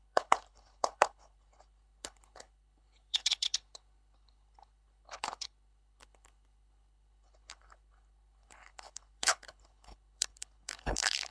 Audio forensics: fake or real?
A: fake